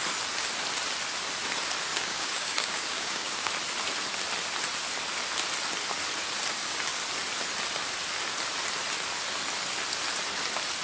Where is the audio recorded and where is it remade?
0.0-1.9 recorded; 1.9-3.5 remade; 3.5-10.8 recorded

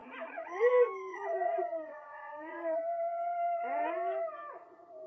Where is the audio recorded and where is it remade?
0.0-0.7 remade; 0.7-1.1 recorded; 1.1-2.8 remade; 2.8-5.1 recorded

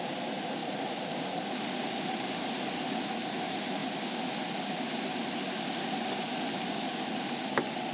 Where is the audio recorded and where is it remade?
0.0-0.6 recorded; 0.6-2.6 remade; 2.6-7.9 recorded

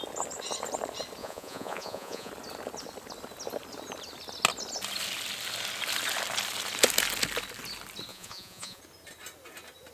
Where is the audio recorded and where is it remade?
0.0-1.2 recorded; 1.2-2.3 remade; 2.3-8.1 recorded; 8.1-8.8 remade; 8.8-9.9 recorded